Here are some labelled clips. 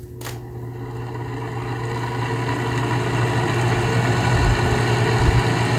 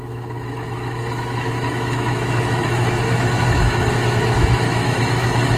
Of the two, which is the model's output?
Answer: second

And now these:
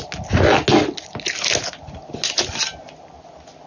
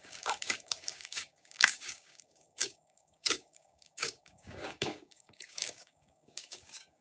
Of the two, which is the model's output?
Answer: second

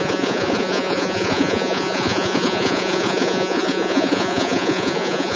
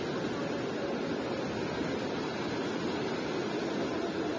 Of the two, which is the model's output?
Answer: first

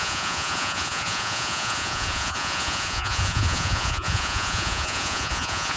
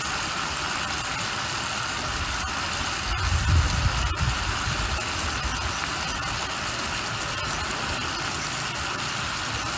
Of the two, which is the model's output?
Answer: first